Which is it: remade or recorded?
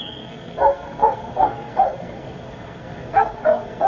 remade